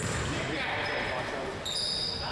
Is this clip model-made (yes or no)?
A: yes